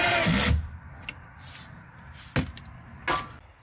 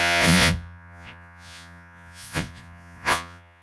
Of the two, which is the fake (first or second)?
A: second